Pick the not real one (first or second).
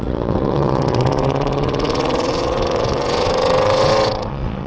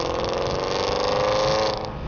first